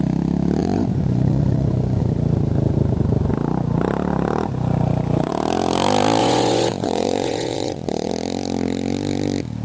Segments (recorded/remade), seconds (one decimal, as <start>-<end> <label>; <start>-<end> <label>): 0.0-0.6 recorded; 0.6-2.0 remade; 2.0-6.2 recorded; 6.2-8.1 remade; 8.1-9.6 recorded